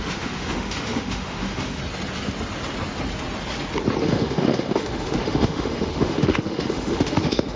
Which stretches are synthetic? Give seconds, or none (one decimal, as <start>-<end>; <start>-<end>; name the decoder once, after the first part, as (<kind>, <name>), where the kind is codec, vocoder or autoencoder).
0.0-1.8 (autoencoder, DAC-VAE); 4.0-7.6